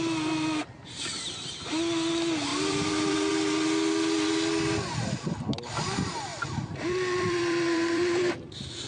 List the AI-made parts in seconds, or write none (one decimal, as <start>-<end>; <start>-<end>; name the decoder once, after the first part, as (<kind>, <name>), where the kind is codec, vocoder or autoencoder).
2.5-3.3 (vocoder, BigVGAN v2); 6.3-8.3